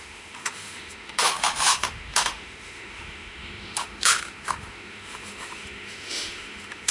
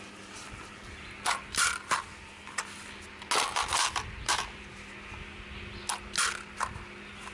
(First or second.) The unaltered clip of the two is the second